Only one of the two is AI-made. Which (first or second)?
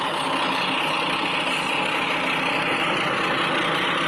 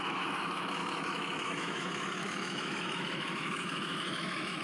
second